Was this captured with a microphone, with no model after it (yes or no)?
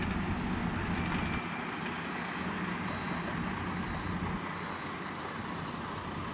yes